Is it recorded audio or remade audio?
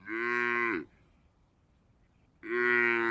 recorded